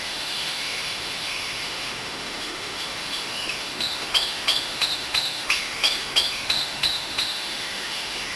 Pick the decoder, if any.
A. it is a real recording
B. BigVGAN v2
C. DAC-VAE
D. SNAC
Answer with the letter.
C